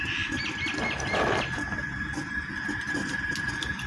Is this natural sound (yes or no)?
yes